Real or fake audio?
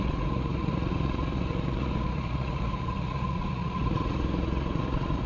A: fake